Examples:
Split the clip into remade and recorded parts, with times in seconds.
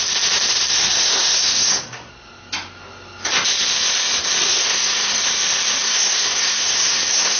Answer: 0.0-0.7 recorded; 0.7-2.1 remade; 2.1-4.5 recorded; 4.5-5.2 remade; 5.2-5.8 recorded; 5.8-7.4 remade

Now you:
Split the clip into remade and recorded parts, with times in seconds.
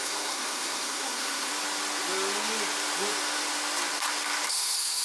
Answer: 0.0-1.5 remade; 1.5-4.5 recorded; 4.5-5.0 remade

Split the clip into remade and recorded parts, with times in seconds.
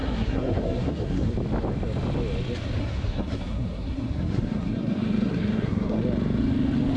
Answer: 0.0-1.3 remade; 1.3-2.8 recorded; 2.8-6.0 remade; 6.0-7.0 recorded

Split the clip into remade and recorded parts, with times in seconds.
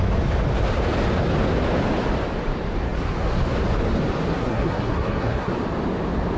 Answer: 0.0-4.3 recorded; 4.3-5.5 remade; 5.5-6.4 recorded